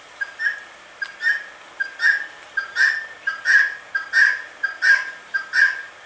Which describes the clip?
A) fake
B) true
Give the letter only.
B